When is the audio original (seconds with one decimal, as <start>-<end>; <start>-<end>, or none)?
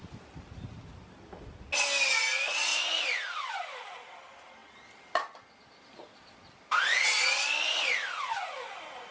0.0-9.1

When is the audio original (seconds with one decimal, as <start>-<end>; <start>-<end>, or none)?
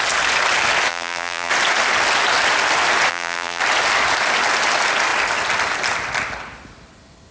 0.0-0.9; 1.5-3.1; 3.6-7.3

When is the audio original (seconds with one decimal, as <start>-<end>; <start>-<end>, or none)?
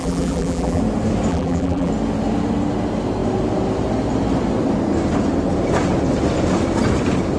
0.8-1.3; 1.9-7.4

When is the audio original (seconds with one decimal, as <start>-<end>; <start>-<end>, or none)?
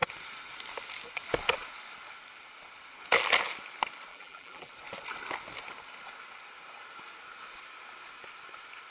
0.0-4.1; 4.7-8.9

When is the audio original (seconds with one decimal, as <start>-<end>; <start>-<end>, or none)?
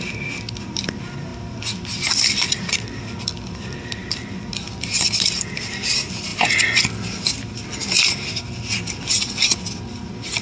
0.0-4.0; 4.5-10.4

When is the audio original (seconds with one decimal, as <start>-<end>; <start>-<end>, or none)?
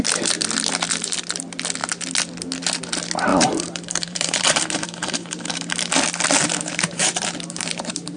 0.0-3.3; 5.9-6.5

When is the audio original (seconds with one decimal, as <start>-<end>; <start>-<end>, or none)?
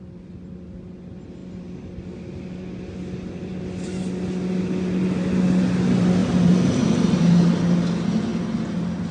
0.0-6.2; 7.6-9.1